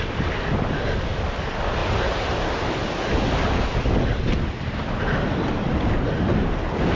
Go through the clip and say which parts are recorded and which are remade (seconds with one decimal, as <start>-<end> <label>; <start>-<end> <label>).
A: 0.0-7.0 recorded